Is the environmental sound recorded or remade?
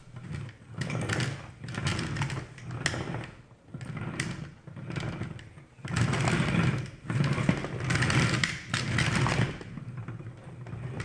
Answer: recorded